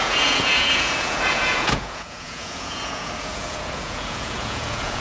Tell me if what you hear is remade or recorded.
remade